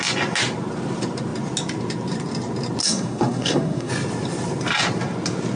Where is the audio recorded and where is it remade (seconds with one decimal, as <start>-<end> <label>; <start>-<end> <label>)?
0.0-2.8 recorded; 2.8-3.9 remade; 3.9-5.6 recorded

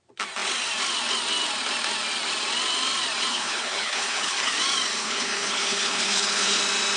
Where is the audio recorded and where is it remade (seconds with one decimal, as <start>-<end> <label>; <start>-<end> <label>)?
0.0-3.3 recorded; 3.3-4.5 remade; 4.5-5.0 recorded; 5.0-6.6 remade; 6.6-7.0 recorded

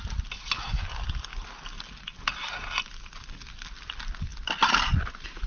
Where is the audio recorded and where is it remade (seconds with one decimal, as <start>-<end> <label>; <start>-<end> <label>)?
0.0-5.5 recorded

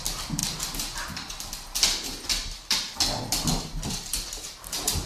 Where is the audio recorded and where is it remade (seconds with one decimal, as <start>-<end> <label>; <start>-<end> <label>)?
0.0-4.1 recorded; 4.1-5.1 remade

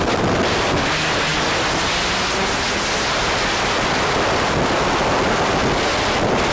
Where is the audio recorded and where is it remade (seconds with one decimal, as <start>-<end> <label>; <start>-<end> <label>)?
0.0-6.5 recorded

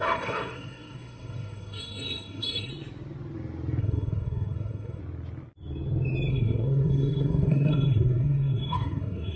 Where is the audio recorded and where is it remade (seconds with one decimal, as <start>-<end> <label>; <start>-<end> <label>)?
0.0-2.7 remade; 2.7-3.8 recorded; 3.8-5.0 remade; 5.0-6.3 recorded; 6.3-9.4 remade

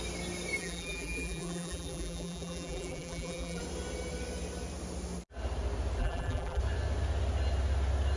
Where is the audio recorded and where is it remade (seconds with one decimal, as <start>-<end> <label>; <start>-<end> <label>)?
0.0-0.6 recorded; 0.6-3.6 remade; 3.6-6.0 recorded; 6.0-6.6 remade; 6.6-8.2 recorded